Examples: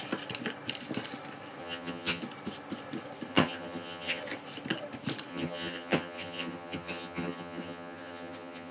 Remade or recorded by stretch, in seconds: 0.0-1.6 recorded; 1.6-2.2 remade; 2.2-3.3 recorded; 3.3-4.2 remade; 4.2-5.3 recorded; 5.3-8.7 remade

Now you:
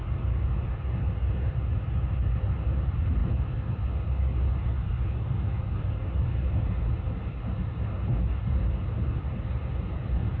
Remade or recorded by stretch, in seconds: 0.0-10.4 recorded